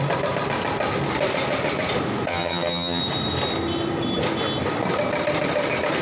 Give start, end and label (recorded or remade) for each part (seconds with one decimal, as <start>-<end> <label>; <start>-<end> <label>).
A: 0.0-2.3 recorded; 2.3-3.0 remade; 3.0-6.0 recorded